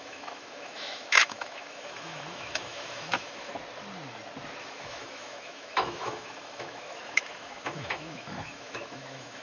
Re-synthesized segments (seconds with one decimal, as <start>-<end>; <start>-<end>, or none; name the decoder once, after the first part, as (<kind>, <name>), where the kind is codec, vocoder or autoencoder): 0.0-3.5 (autoencoder, DAC-VAE); 4.6-9.4